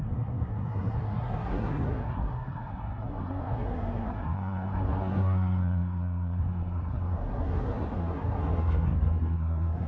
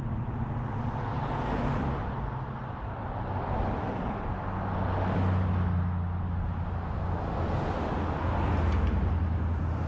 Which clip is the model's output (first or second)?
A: first